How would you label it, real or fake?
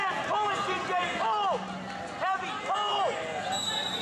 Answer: real